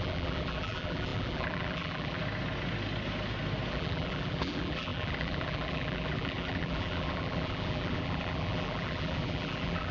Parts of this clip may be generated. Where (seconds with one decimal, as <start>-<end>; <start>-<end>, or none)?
0.0-2.2; 3.7-9.9